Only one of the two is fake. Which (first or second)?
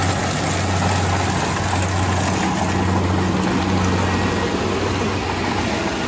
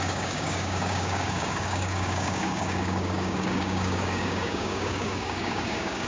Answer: second